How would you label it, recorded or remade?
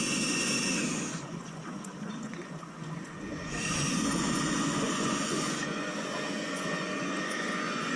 remade